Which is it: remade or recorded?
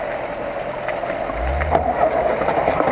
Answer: recorded